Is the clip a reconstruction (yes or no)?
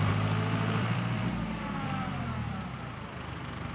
yes